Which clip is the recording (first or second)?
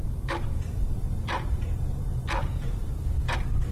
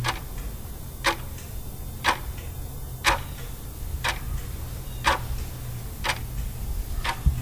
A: second